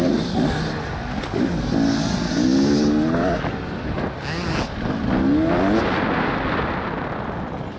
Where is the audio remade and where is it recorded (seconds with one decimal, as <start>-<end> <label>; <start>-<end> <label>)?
0.0-7.8 recorded